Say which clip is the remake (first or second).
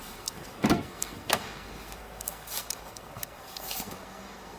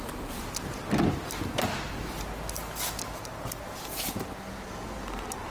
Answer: first